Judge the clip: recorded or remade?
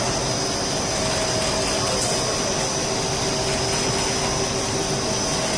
recorded